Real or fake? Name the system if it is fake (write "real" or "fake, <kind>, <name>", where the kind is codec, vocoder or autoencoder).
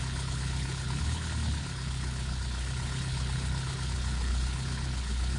fake, codec, HILCodec